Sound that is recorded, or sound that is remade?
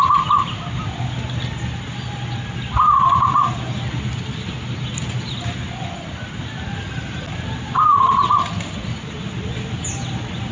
recorded